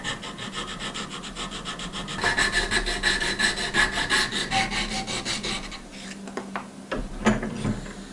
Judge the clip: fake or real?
real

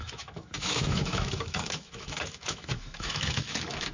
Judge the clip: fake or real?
fake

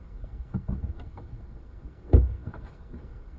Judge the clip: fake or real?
fake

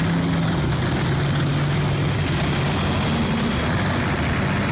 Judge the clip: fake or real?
real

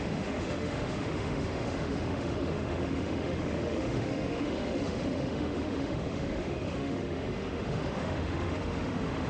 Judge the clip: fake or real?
fake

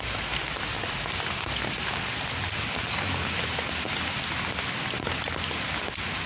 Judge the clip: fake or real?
real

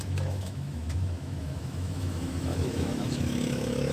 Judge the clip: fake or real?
fake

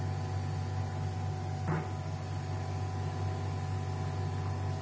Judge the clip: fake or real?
real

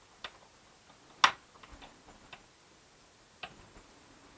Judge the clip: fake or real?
real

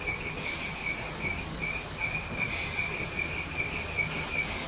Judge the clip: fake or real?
real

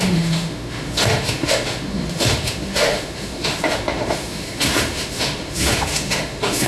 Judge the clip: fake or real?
fake